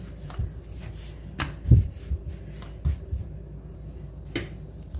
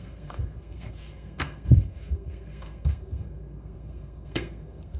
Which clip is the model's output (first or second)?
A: second